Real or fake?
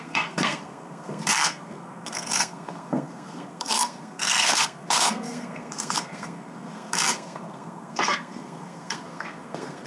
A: fake